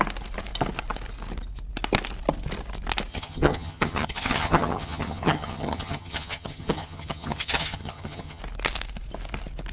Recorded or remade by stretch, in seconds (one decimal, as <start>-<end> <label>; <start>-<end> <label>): 0.0-3.1 recorded; 3.1-8.4 remade; 8.4-9.7 recorded